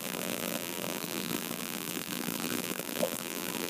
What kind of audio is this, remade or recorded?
remade